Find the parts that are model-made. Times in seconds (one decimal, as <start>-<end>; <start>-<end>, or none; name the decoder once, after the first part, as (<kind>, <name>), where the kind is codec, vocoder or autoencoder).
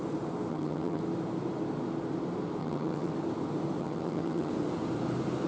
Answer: 0.5-1.0 (vocoder, HiFi-GAN); 2.6-3.1; 3.8-4.5